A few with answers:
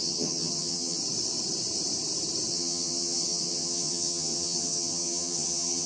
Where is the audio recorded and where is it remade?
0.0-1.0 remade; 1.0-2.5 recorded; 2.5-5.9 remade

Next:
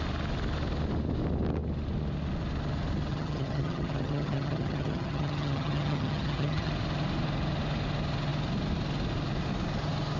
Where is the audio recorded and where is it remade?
0.0-3.1 recorded; 3.1-6.7 remade; 6.7-10.2 recorded

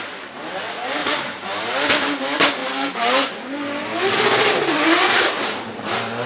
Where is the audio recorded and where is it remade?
0.0-6.3 recorded